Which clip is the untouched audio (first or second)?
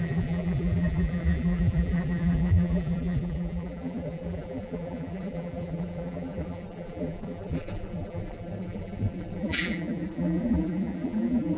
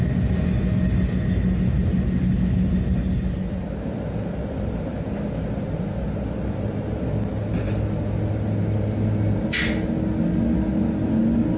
second